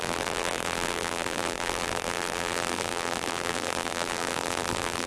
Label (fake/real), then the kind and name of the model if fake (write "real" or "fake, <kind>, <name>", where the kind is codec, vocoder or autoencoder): fake, vocoder, BigVGAN v2